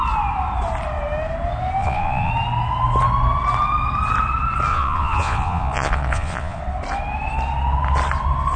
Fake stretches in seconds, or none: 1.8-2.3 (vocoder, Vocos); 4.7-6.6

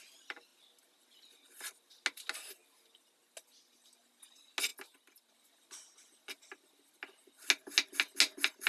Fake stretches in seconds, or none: none

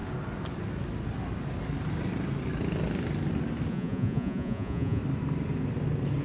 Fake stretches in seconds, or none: 3.7-5.0 (vocoder, Vocos)

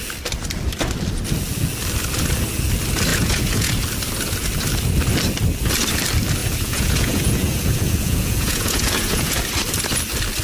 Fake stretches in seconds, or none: 3.1-3.7 (vocoder, Vocos); 6.4-9.4

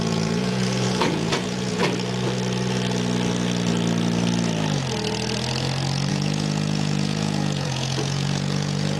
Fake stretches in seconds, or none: 0.0-1.8 (vocoder, Vocos); 6.1-9.0